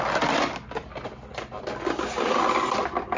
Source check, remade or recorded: recorded